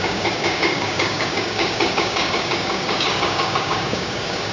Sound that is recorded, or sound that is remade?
remade